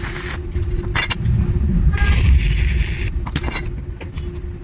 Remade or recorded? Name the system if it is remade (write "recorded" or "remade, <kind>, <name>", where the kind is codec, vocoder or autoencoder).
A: recorded